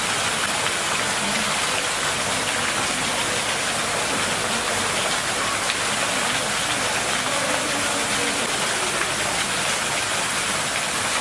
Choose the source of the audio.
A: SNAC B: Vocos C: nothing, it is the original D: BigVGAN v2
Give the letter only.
C